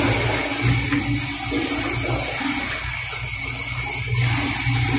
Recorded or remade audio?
recorded